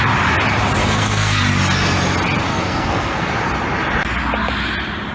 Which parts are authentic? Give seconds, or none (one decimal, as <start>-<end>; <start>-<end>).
0.0-0.8; 1.4-2.5; 3.3-5.1